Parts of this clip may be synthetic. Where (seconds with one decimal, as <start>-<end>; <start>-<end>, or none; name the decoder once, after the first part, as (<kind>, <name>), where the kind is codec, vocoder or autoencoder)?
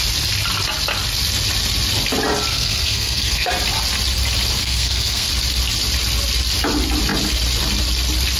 2.5-3.5 (codec, SNAC); 4.6-5.3